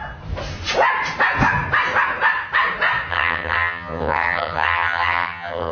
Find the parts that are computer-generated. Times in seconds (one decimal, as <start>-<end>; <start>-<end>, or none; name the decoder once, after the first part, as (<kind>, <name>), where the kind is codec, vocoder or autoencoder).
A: 3.1-5.7 (vocoder, HiFi-GAN)